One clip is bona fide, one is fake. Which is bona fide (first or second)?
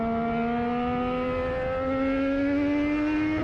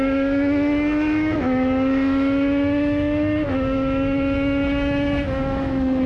first